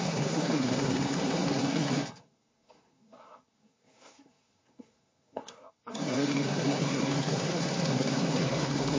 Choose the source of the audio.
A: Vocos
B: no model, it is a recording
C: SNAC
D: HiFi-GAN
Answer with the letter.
C